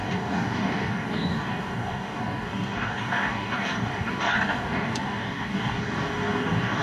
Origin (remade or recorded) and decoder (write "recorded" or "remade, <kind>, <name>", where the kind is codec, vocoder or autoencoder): remade, codec, DAC